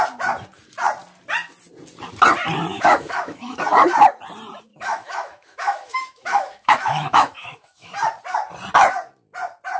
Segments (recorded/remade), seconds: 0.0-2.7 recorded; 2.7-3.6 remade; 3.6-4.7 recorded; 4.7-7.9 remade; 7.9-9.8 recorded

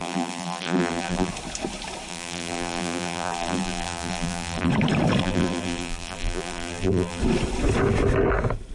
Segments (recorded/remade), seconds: 0.0-1.3 remade; 1.3-2.1 recorded; 2.1-4.7 remade; 4.7-5.2 recorded; 5.2-7.2 remade; 7.2-8.7 recorded

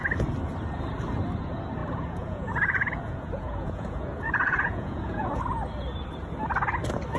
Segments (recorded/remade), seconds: 0.0-1.8 recorded; 1.8-5.4 remade; 5.4-7.2 recorded

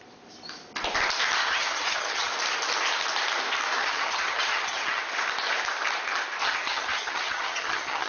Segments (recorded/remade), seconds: 0.0-1.4 recorded; 1.4-2.3 remade; 2.3-3.8 recorded; 3.8-5.0 remade; 5.0-6.4 recorded; 6.4-8.1 remade

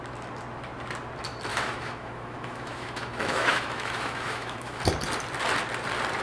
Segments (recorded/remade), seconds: 0.0-1.5 recorded; 1.5-4.8 remade; 4.8-6.2 recorded

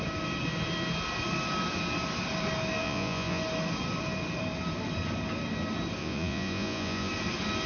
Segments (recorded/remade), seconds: 0.0-2.8 recorded; 2.8-3.4 remade; 3.4-6.0 recorded; 6.0-7.1 remade; 7.1-7.7 recorded

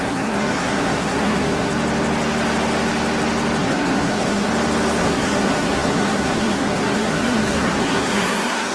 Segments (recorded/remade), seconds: 0.0-1.7 remade; 1.7-3.6 recorded; 3.6-4.5 remade; 4.5-5.0 recorded; 5.0-8.7 remade

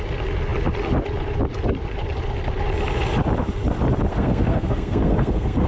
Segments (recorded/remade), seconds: 0.0-4.1 recorded; 4.1-5.7 remade